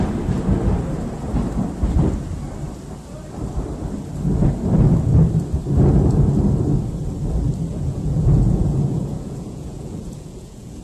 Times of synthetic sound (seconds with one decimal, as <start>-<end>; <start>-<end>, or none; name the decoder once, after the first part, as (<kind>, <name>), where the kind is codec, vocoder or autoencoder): 7.7-10.8 (vocoder, Vocos)